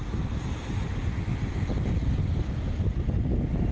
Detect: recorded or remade recorded